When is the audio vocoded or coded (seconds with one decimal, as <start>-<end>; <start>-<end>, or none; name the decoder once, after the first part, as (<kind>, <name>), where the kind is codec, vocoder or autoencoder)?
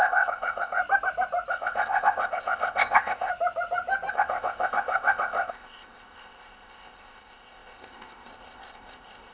0.0-0.8 (codec, ZipCodec); 1.5-3.3; 4.1-9.3